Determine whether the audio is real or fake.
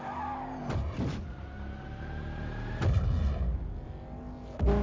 real